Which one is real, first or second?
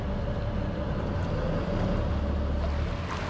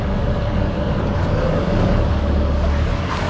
first